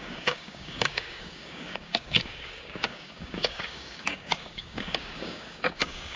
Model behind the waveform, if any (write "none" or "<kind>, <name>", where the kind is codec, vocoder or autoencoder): codec, DAC